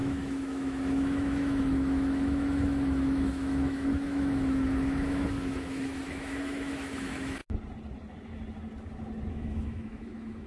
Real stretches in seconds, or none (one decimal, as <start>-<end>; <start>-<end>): 7.4-9.3